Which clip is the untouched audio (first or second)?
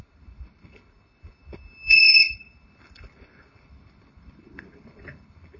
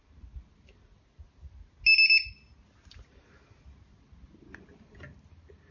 second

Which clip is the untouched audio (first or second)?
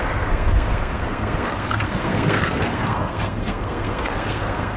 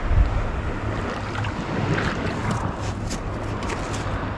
second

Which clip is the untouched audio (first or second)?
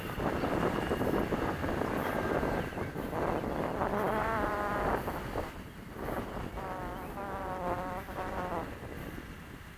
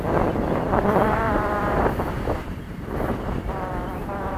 first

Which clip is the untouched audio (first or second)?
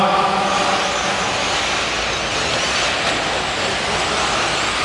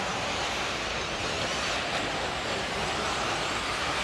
first